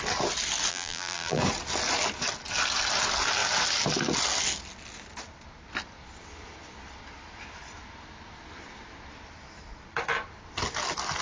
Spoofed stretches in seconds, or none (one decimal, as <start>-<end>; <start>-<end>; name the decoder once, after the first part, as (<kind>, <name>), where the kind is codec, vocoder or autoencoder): 0.7-1.4 (vocoder, BigVGAN v2)

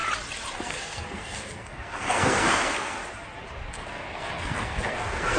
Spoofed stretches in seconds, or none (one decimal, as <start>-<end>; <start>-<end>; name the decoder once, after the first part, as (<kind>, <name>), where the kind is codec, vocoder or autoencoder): 0.6-3.0 (codec, SNAC); 3.7-5.4

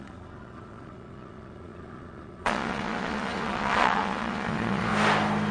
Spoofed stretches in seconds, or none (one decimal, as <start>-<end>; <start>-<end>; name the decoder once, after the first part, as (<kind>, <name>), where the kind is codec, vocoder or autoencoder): 0.0-4.9 (vocoder, Vocos)

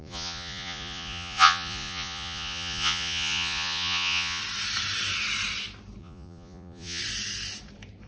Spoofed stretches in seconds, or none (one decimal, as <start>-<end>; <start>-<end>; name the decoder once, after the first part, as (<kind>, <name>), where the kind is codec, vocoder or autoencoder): 0.0-4.4 (vocoder, Vocos); 6.0-7.0

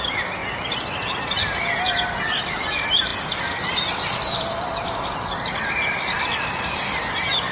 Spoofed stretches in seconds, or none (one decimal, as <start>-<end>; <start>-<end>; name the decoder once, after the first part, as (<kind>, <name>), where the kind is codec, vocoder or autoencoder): 0.0-0.4 (vocoder, BigVGAN v2); 2.6-7.5

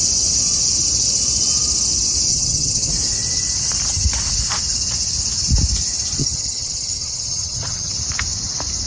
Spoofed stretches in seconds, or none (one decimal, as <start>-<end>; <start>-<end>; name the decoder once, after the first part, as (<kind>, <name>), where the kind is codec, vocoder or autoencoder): 2.3-2.9 (vocoder, HiFi-GAN); 6.2-7.9

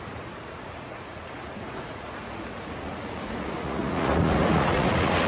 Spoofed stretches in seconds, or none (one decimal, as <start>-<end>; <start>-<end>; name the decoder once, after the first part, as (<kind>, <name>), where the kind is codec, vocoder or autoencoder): 0.0-5.3 (vocoder, Vocos)